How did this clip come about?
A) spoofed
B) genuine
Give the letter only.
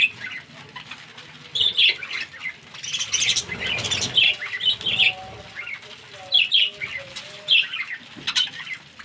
B